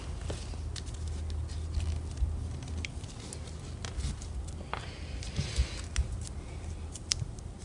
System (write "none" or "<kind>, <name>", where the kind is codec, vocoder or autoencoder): none